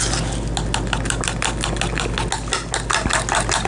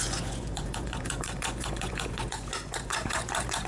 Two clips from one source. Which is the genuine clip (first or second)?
first